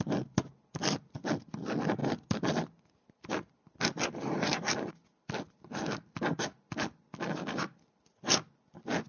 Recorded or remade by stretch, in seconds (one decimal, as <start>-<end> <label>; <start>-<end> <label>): 0.0-9.1 recorded